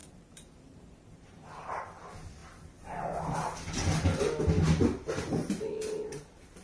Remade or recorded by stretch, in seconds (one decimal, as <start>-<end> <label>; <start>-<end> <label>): 0.0-1.8 remade; 1.8-6.6 recorded